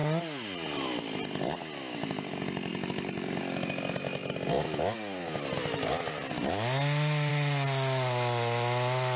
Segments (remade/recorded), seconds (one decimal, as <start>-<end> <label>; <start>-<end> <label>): 0.0-2.7 recorded; 2.7-3.4 remade; 3.4-9.2 recorded